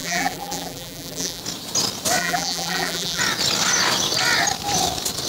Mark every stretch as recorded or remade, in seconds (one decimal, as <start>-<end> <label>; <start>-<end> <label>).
0.0-1.4 remade; 1.4-2.2 recorded; 2.2-3.2 remade; 3.2-5.3 recorded